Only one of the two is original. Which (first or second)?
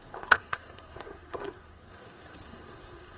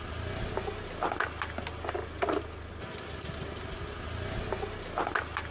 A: second